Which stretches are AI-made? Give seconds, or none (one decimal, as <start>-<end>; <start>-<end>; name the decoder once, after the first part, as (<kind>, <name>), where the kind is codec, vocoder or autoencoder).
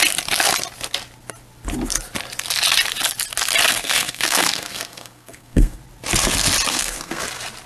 3.7-5.8 (codec, SNAC); 6.7-7.2